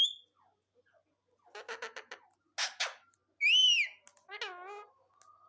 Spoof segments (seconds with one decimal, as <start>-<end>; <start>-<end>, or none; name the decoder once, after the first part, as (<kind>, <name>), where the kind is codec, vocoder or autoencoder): none